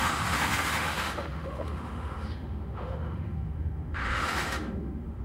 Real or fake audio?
fake